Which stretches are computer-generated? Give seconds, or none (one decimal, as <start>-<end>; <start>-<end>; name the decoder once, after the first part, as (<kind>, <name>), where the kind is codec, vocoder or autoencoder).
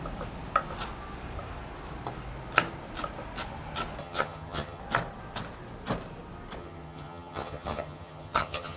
4.0-4.8 (vocoder, HiFi-GAN); 6.6-8.8